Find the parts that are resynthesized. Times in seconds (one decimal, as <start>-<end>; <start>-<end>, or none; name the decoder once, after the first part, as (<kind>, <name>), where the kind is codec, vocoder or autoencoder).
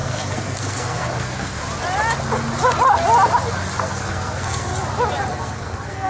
0.0-1.6 (codec, SNAC); 3.8-4.7; 5.3-6.1